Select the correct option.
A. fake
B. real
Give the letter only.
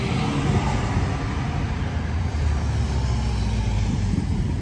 B